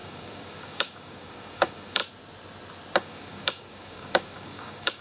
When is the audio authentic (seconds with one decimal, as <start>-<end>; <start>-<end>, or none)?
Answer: 2.0-3.0